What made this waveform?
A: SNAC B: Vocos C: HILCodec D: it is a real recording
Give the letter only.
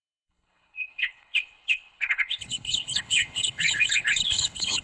C